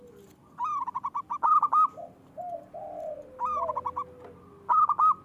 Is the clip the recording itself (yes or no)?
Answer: yes